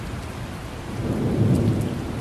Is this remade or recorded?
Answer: recorded